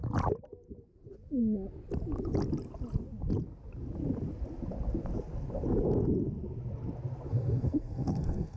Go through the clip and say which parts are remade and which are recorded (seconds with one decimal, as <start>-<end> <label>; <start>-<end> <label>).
0.0-7.3 recorded; 7.3-8.6 remade